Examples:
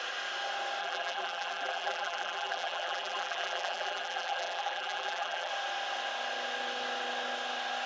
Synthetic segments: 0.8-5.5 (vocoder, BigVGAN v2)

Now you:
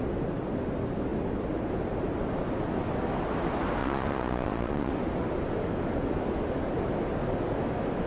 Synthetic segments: 3.8-4.9 (vocoder, Vocos)

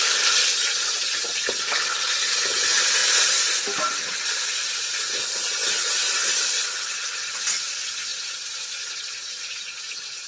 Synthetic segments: 3.0-4.0 (vocoder, BigVGAN v2); 6.2-7.4; 8.1-10.3

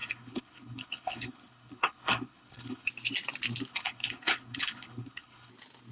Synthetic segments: 0.0-2.9 (codec, HILCodec); 3.7-5.5